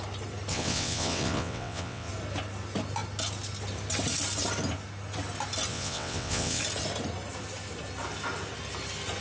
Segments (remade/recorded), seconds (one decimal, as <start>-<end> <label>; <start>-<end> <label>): 0.0-0.5 recorded; 0.5-2.1 remade; 2.1-5.7 recorded; 5.7-6.6 remade; 6.6-9.2 recorded